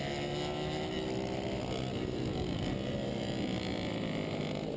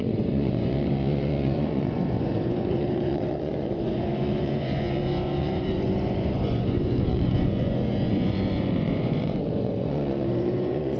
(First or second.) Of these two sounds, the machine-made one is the second